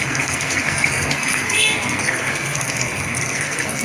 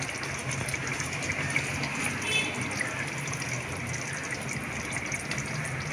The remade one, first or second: first